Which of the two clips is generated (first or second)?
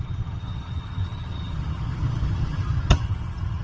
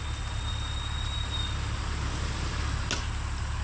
first